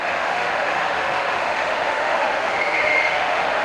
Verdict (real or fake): fake